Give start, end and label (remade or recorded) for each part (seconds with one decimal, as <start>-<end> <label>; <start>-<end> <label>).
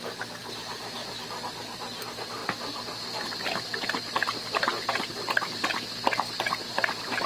0.0-7.3 recorded